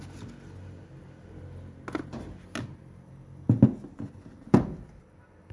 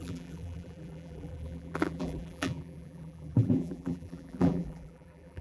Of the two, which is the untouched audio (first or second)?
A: first